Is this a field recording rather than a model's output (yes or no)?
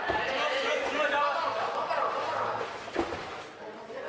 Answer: yes